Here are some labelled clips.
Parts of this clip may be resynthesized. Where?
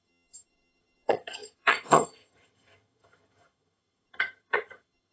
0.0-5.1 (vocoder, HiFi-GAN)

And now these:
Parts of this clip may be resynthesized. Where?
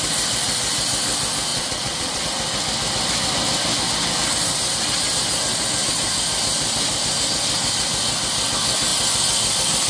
1.5-2.2 (vocoder, Vocos)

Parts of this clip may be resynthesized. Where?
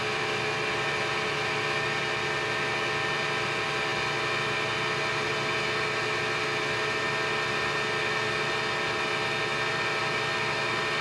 none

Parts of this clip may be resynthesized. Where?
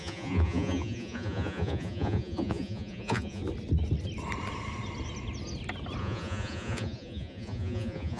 0.0-3.4 (vocoder, Vocos); 6.0-8.2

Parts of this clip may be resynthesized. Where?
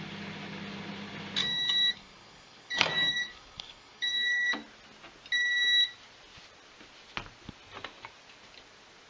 1.4-4.5 (codec, DAC)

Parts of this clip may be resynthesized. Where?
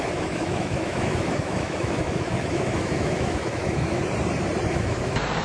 0.0-4.0 (autoencoder, DAC-VAE); 4.7-5.4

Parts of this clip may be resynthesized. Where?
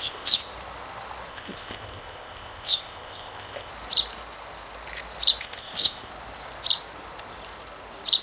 0.0-0.5 (codec, ZipCodec); 1.3-3.7; 5.4-6.1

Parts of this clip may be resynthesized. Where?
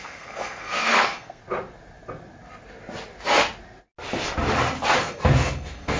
0.0-1.4 (codec, SNAC); 5.0-6.0